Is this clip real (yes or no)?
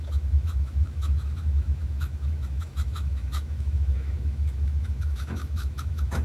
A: no